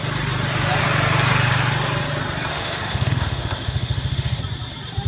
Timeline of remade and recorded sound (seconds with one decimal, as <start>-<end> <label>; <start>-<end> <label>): 0.0-2.5 recorded; 2.5-4.4 remade; 4.4-5.1 recorded